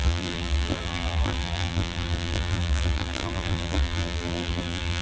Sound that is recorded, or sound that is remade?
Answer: remade